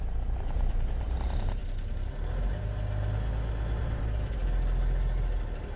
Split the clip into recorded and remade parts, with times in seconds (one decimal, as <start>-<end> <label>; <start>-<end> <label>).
0.0-1.6 remade; 1.6-3.8 recorded; 3.8-4.4 remade; 4.4-5.8 recorded